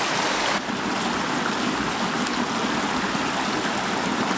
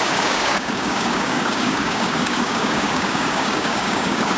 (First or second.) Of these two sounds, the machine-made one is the second